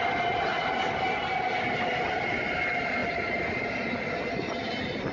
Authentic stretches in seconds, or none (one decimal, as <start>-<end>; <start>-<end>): 0.0-5.1